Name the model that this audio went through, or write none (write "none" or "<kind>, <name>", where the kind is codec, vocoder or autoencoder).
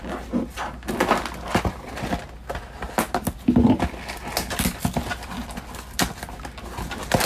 none